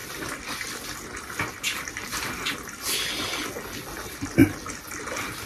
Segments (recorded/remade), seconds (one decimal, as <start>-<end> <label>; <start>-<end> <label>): 0.0-2.9 remade; 2.9-5.5 recorded